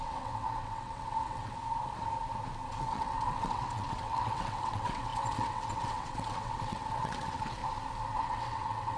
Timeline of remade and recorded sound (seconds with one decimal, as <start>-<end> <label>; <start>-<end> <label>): 0.0-1.6 remade; 1.6-2.7 recorded; 2.7-7.6 remade; 7.6-8.2 recorded; 8.2-9.0 remade

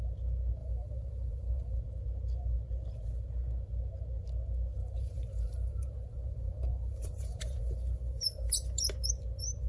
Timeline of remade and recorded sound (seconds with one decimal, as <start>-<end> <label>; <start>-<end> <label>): 0.0-0.6 recorded; 0.6-1.8 remade; 1.8-4.8 recorded; 4.8-8.9 remade; 8.9-9.7 recorded

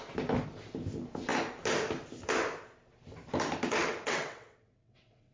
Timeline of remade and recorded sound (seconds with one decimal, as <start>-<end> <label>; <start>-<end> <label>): 0.0-3.7 recorded; 3.7-5.3 remade

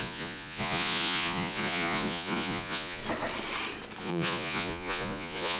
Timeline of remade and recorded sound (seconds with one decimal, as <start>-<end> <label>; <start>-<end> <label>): 0.0-3.0 remade; 3.0-4.0 recorded; 4.0-5.6 remade

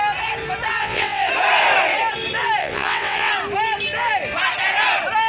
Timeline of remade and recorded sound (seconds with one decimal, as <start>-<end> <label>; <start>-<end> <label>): 0.0-0.8 recorded; 0.8-1.3 remade; 1.3-2.6 recorded; 2.6-3.3 remade; 3.3-5.3 recorded

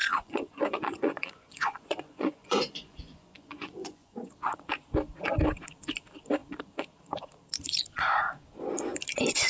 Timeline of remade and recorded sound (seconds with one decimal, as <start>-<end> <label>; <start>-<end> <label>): 0.0-4.3 remade; 4.3-9.5 recorded